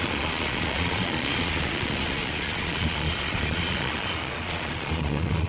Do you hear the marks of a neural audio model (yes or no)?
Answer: yes